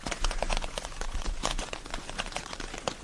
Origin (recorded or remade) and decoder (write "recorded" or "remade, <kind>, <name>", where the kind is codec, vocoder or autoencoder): remade, vocoder, Vocos